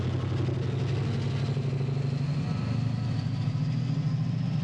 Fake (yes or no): no